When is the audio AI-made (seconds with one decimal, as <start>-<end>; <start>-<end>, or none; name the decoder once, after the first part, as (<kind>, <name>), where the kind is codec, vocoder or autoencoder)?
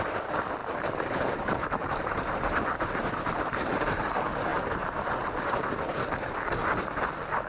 0.6-4.0 (vocoder, BigVGAN v2); 4.5-5.8